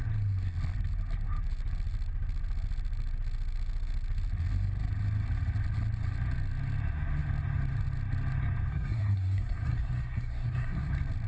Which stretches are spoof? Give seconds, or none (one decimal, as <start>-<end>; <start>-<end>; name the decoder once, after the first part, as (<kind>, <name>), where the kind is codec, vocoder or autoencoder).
8.7-10.9 (codec, SNAC)